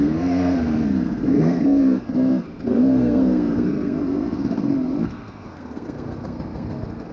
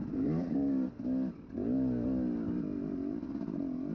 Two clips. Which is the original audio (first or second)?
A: second